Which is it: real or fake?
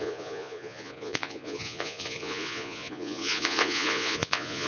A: fake